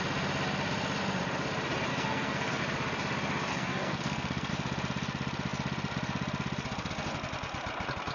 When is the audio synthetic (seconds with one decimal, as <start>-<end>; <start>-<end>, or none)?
1.9-2.6; 3.5-4.5